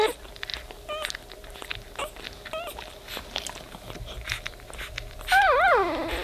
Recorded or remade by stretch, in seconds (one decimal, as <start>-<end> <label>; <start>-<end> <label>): 0.0-6.2 recorded